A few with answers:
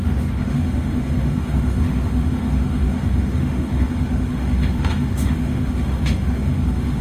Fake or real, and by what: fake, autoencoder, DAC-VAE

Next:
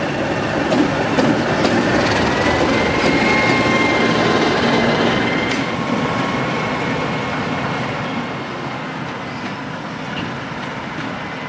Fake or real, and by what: real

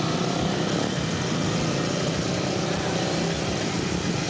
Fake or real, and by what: real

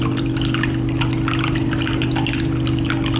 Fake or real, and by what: real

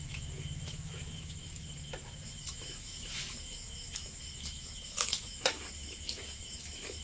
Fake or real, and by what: fake, autoencoder, DAC-VAE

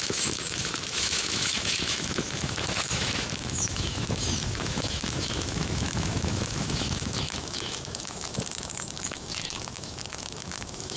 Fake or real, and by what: fake, autoencoder, DAC-VAE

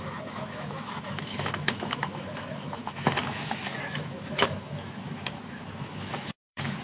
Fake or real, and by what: fake, autoencoder, DAC-VAE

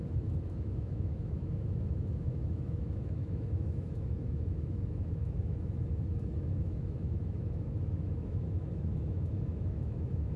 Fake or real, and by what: fake, autoencoder, DAC-VAE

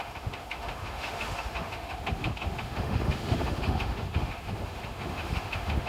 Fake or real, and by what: fake, autoencoder, DAC-VAE